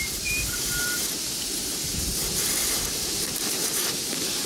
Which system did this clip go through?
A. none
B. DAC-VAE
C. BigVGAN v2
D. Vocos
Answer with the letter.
C